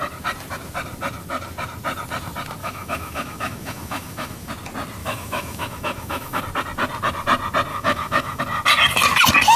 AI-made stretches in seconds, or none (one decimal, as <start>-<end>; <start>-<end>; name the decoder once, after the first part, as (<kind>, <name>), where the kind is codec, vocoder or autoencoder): 2.6-4.5 (autoencoder, DAC-VAE); 5.0-6.4; 7.7-8.4